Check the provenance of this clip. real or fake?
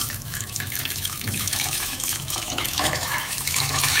fake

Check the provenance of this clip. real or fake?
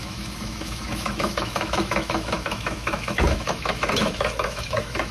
fake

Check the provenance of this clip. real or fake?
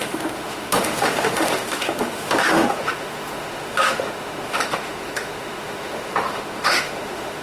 fake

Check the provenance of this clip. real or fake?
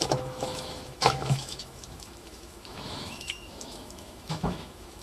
fake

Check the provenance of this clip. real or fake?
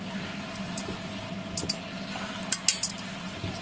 real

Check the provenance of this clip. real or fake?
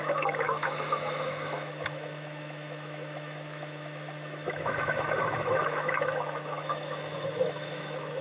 fake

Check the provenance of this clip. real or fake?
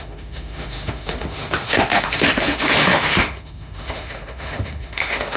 fake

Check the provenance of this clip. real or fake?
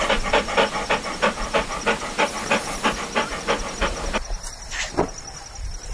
real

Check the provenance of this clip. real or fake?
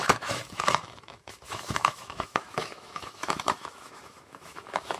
fake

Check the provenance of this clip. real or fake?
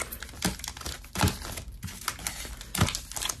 real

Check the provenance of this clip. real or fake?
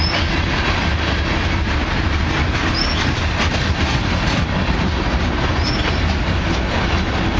real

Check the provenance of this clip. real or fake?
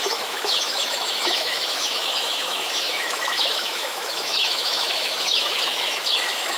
fake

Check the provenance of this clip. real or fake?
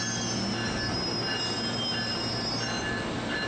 real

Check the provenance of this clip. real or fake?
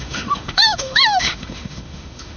fake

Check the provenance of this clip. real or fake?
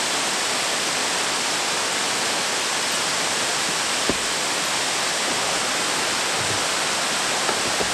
real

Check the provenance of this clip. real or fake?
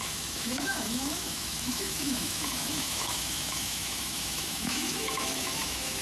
fake